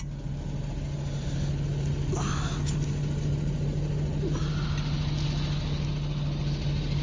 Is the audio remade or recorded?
recorded